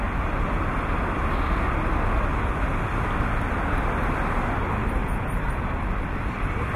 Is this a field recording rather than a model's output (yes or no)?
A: yes